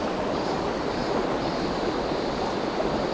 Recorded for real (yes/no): yes